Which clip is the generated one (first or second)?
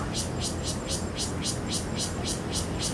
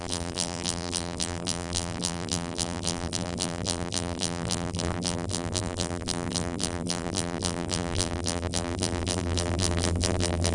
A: second